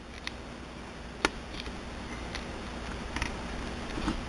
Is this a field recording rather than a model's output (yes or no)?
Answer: yes